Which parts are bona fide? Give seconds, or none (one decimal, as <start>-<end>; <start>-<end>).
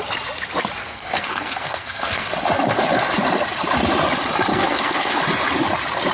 0.0-0.8; 2.3-4.5; 5.2-6.1